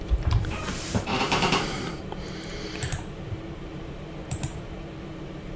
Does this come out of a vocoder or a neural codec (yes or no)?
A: yes